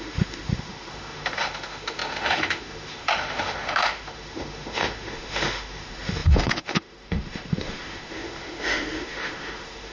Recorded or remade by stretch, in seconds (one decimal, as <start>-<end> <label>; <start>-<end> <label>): 0.0-9.9 remade